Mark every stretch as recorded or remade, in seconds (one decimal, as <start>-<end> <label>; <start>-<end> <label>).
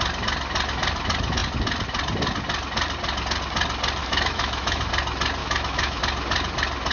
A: 0.0-4.0 recorded; 4.0-4.9 remade; 4.9-5.4 recorded; 5.4-6.0 remade; 6.0-6.9 recorded